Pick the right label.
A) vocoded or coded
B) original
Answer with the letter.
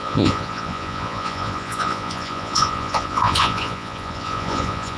A